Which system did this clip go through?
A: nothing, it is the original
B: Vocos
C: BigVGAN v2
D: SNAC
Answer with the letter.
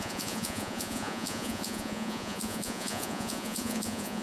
B